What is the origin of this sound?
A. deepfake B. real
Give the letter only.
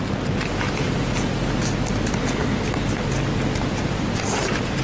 B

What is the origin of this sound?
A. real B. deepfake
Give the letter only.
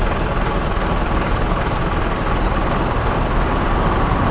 B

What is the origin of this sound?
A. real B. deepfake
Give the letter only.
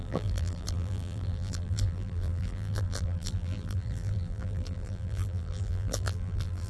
B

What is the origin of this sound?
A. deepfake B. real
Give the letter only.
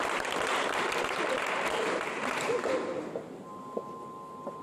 A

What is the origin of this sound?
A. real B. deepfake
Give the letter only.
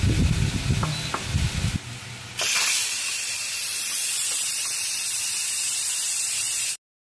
A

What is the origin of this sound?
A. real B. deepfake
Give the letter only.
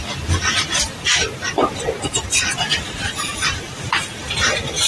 B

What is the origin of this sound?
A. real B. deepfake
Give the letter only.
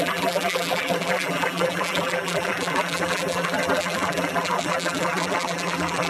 B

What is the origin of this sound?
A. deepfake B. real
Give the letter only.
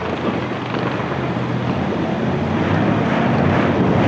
B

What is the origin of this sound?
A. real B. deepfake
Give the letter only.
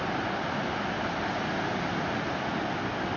A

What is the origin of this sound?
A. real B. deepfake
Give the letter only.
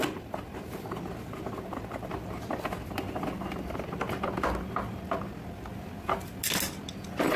A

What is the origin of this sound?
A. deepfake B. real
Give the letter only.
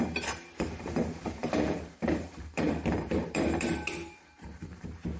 A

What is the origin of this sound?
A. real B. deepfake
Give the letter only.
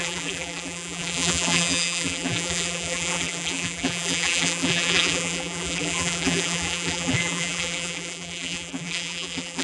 B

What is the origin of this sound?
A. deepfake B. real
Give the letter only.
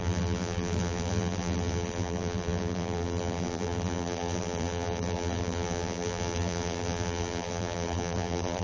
A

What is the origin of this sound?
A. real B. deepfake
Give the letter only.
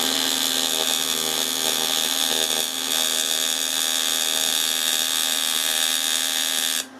B